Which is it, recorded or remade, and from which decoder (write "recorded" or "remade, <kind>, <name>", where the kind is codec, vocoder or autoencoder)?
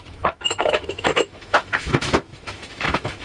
remade, autoencoder, DAC-VAE